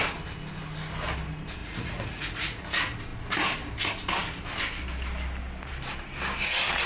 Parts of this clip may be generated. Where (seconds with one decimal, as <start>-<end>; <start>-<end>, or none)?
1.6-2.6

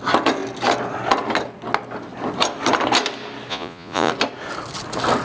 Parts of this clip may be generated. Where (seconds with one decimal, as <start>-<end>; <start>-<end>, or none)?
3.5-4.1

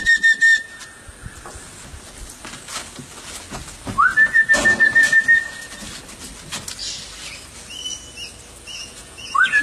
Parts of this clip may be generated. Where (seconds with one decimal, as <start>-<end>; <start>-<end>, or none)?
8.8-9.6